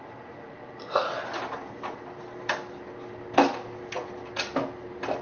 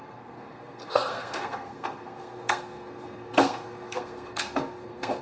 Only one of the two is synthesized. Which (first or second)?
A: second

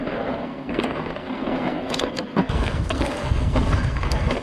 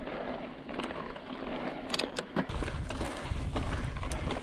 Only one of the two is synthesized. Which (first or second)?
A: first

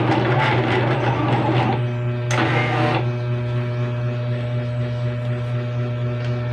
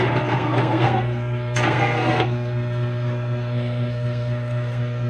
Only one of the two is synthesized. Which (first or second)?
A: second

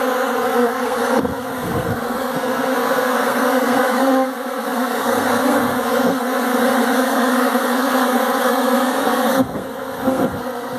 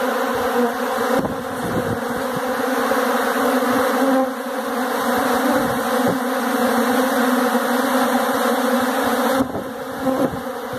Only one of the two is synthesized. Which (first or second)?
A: first